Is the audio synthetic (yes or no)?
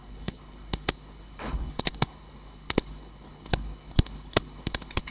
yes